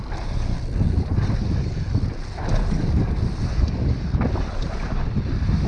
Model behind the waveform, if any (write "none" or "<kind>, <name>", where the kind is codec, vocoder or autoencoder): none